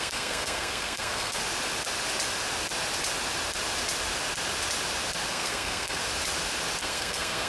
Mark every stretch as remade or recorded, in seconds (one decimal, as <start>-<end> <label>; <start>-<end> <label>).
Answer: 0.0-1.4 remade; 1.4-5.3 recorded; 5.3-6.0 remade; 6.0-6.8 recorded; 6.8-7.5 remade